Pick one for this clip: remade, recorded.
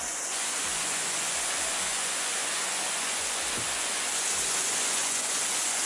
remade